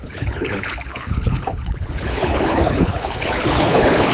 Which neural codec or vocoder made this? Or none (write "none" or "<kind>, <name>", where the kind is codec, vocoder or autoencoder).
codec, HILCodec